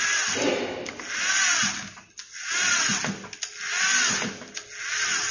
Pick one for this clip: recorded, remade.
recorded